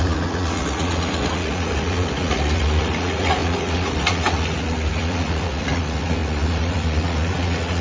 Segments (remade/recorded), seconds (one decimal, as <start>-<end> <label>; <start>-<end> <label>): 0.0-7.8 remade